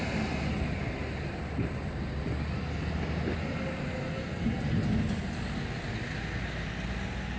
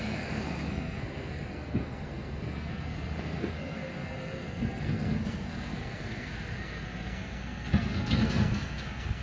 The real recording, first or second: first